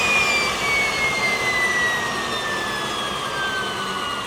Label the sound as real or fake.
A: real